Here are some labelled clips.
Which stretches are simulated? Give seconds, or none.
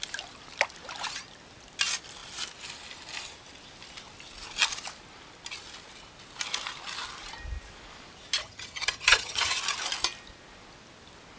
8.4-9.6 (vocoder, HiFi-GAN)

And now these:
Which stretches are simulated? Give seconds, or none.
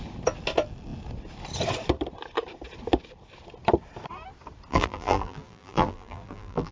4.7-6.7 (vocoder, BigVGAN v2)